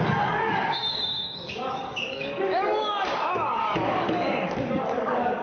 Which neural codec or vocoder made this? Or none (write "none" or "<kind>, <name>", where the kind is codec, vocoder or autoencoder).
codec, DAC